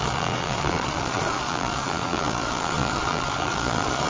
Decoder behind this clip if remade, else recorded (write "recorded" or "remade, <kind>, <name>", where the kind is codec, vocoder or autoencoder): remade, vocoder, Vocos